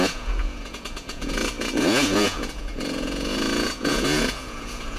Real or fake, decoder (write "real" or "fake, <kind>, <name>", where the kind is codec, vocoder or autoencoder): fake, vocoder, Vocos